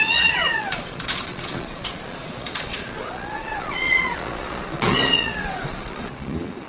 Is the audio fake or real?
fake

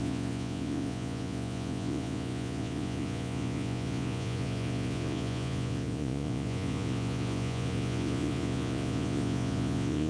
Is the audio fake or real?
fake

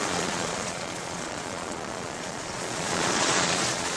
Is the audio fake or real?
fake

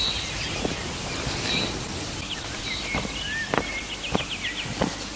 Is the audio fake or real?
real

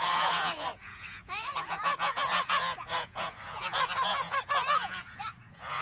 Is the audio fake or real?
fake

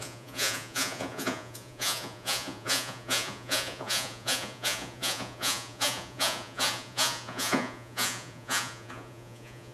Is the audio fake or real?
fake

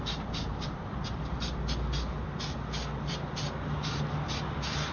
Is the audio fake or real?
real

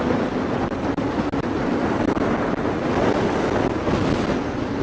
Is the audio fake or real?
real